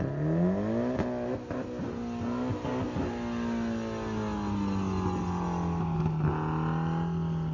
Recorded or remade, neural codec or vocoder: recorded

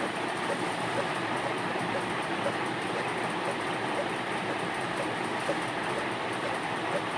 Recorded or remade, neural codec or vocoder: remade, vocoder, BigVGAN v2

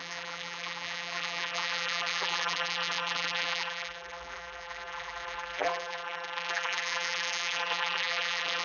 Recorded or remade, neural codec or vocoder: remade, vocoder, BigVGAN v2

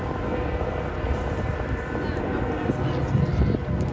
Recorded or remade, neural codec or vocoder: recorded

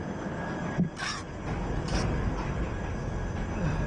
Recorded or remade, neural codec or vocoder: recorded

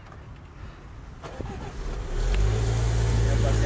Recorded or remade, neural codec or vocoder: recorded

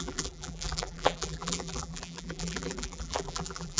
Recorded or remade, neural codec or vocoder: remade, vocoder, BigVGAN v2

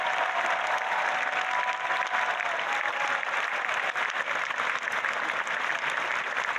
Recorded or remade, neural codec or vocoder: recorded